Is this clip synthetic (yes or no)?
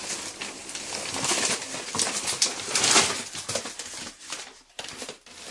no